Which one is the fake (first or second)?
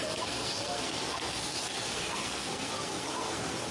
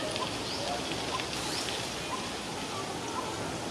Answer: first